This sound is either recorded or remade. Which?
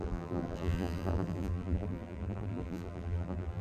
remade